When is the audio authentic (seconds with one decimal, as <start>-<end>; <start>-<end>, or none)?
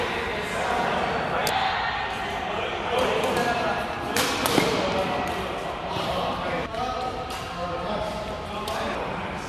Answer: 0.0-9.5